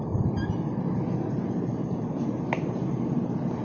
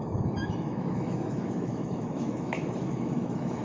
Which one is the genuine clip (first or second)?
first